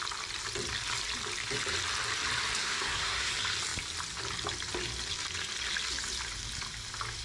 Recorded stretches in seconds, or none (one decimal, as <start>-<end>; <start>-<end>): 0.0-2.6; 3.3-7.2